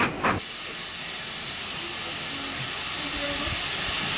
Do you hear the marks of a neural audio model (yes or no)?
no